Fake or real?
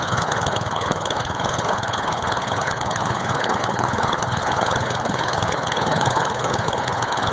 fake